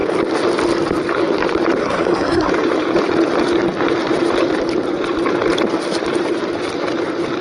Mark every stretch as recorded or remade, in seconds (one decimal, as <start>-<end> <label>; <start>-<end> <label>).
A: 0.0-1.8 recorded; 1.8-2.5 remade; 2.5-7.4 recorded